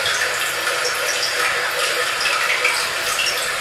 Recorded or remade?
recorded